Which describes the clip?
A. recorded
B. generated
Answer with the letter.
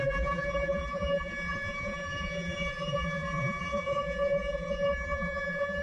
B